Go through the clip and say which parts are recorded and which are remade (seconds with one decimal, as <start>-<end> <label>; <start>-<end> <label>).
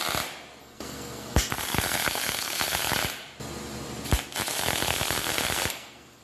0.0-0.6 recorded; 0.6-2.9 remade; 2.9-4.5 recorded; 4.5-6.2 remade